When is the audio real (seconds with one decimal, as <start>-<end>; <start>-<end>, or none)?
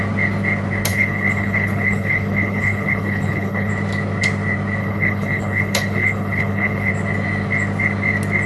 0.0-0.9; 3.7-4.8; 6.9-8.5